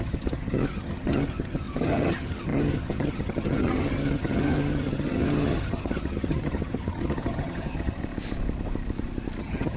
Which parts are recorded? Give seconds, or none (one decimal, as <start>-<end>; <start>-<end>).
8.0-9.4